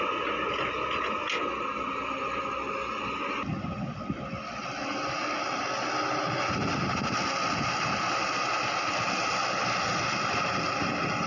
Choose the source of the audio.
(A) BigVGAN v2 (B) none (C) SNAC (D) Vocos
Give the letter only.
B